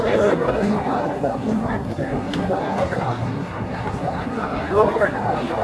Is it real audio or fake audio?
fake